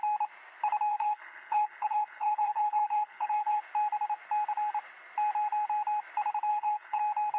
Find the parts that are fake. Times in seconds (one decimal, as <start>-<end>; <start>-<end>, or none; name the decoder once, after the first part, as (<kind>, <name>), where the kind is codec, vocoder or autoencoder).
0.9-3.6 (codec, HILCodec); 6.5-7.0